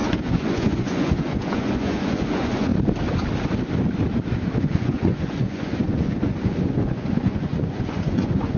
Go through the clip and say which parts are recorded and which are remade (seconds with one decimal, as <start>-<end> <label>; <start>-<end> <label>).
0.0-2.7 remade; 2.7-4.6 recorded; 4.6-8.6 remade